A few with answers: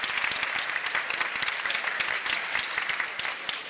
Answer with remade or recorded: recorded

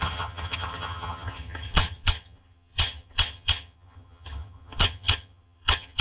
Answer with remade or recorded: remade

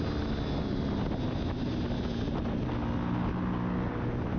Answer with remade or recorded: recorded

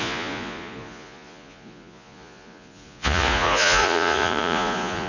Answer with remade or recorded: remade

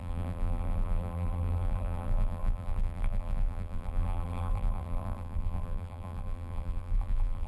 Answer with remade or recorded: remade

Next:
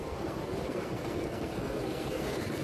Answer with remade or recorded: remade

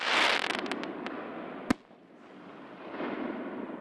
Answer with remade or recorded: recorded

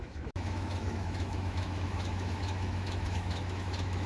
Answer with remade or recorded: remade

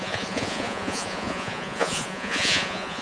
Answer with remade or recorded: remade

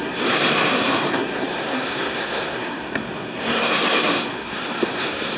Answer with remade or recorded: remade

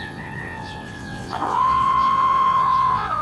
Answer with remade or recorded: remade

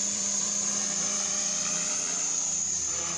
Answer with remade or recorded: remade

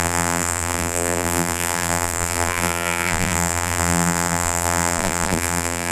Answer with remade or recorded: remade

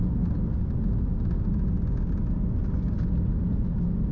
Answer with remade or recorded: recorded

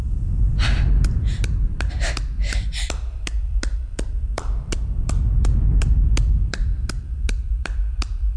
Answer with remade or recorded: remade